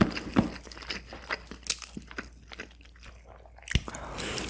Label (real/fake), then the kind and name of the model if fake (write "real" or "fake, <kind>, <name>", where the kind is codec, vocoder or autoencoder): real